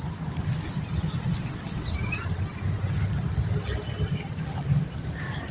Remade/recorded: recorded